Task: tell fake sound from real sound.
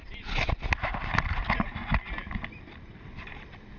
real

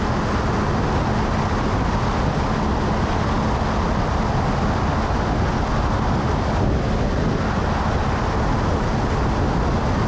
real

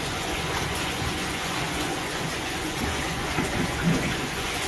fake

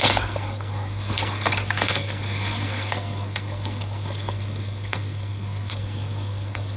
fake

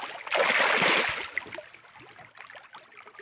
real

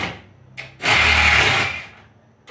real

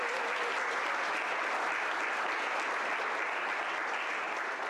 real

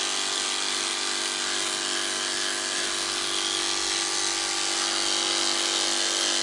real